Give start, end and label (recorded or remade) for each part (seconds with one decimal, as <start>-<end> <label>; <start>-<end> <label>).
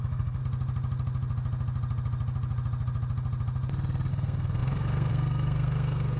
0.0-0.4 remade; 0.4-4.1 recorded; 4.1-6.2 remade